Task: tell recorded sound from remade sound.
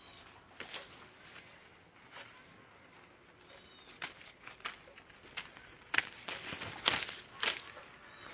recorded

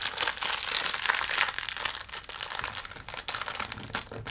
recorded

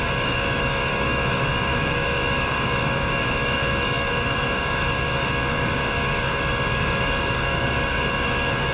remade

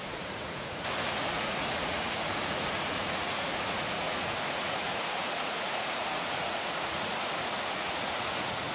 remade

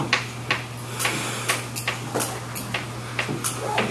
recorded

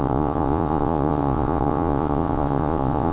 remade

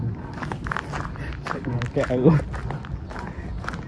recorded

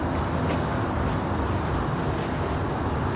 recorded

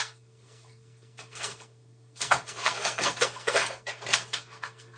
remade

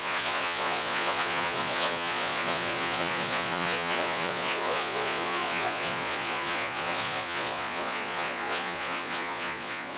remade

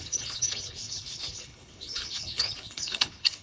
remade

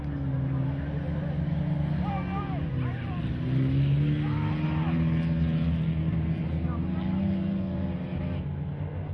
recorded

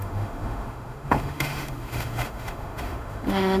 remade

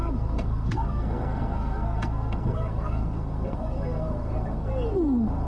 remade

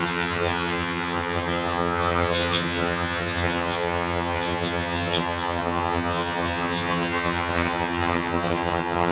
remade